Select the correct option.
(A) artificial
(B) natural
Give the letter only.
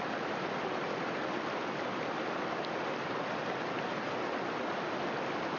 B